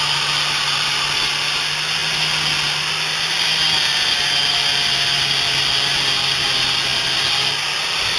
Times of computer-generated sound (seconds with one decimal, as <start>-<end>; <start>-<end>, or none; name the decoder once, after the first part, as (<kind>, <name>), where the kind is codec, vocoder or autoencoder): none